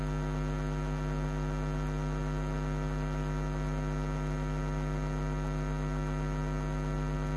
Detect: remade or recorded recorded